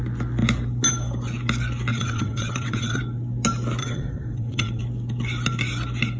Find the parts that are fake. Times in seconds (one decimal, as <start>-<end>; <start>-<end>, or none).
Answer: 1.9-3.0; 3.8-4.8